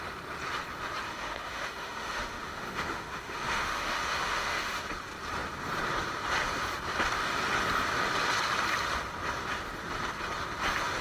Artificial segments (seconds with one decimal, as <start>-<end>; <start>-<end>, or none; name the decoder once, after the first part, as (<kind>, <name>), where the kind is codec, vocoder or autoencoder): 1.1-4.7 (autoencoder, DAC-VAE)